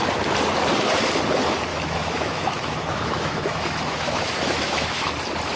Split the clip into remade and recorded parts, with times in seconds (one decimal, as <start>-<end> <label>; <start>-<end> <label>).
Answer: 0.0-1.7 recorded; 1.7-5.1 remade; 5.1-5.6 recorded